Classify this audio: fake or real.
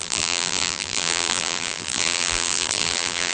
fake